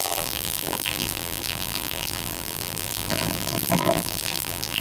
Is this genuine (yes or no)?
no